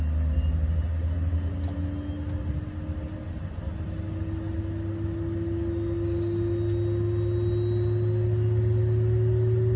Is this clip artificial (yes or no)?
no